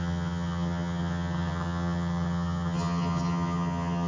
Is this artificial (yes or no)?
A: yes